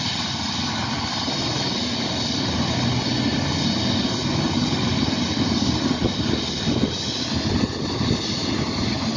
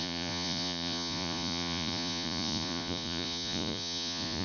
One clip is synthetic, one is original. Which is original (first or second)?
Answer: first